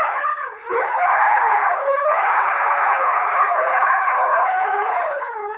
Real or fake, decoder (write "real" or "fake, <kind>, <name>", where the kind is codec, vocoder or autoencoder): fake, codec, HILCodec